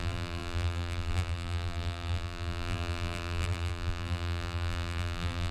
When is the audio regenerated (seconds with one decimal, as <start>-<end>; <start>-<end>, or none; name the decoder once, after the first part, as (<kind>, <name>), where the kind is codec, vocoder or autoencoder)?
0.0-5.5 (vocoder, BigVGAN v2)